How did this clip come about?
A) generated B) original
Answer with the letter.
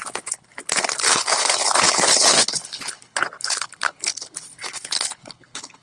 A